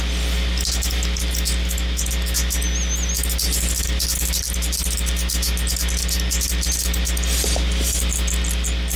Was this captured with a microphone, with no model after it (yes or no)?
yes